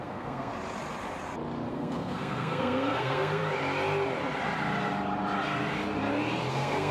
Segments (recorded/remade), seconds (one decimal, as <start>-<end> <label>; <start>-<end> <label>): 0.0-0.5 remade; 0.5-1.7 recorded; 1.7-3.4 remade; 3.4-6.5 recorded; 6.5-6.9 remade